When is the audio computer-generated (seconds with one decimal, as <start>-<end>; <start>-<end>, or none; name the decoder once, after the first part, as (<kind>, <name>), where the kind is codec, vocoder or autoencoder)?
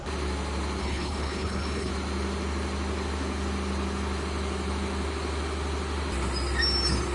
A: 0.8-1.9 (codec, HILCodec)